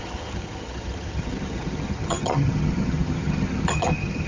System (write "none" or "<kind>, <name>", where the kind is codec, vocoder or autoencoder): vocoder, HiFi-GAN